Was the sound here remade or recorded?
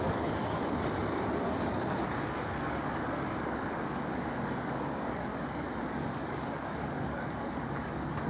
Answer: remade